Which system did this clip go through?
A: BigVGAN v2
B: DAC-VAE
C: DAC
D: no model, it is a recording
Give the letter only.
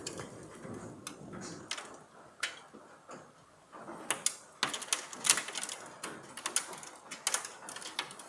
D